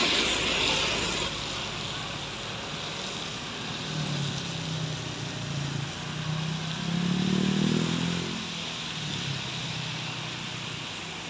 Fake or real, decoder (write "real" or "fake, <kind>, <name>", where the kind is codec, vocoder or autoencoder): real